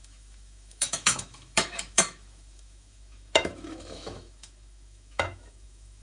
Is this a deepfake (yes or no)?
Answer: yes